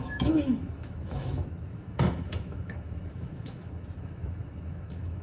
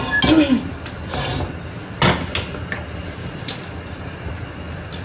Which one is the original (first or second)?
second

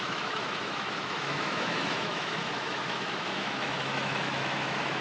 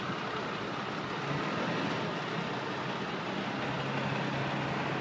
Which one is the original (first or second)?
second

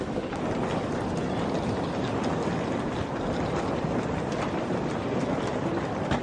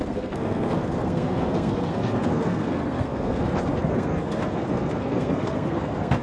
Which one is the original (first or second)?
first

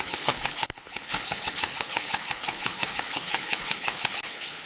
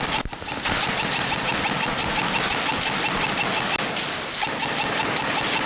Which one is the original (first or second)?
second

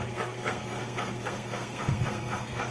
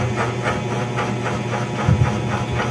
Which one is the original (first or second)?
second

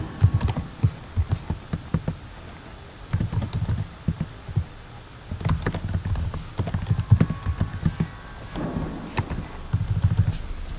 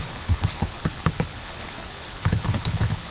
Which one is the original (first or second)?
first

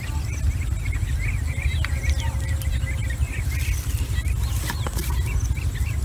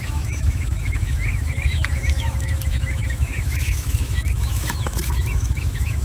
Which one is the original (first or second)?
first